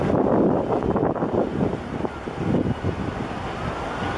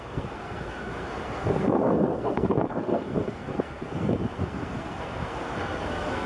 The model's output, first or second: second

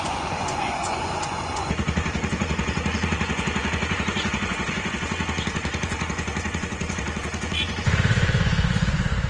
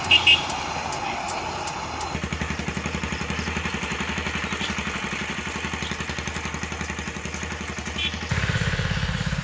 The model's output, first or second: first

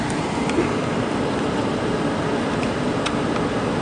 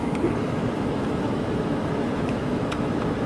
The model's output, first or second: second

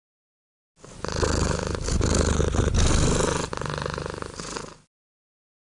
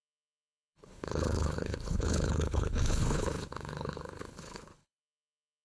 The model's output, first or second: second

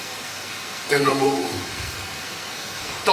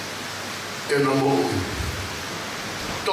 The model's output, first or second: first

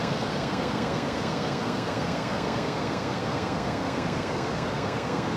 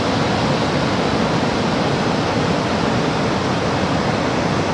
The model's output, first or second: first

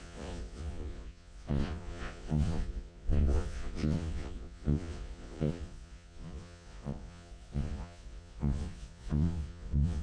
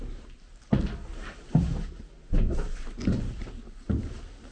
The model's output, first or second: first